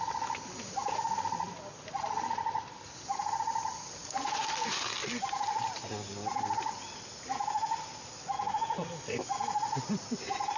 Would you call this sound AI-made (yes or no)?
no